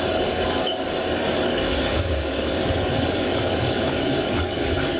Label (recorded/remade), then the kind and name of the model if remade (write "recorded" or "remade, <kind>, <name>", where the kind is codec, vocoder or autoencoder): remade, codec, DAC